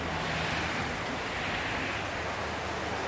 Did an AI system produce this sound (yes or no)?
no